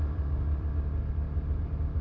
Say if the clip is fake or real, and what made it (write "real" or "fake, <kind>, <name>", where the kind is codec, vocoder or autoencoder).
fake, vocoder, BigVGAN v2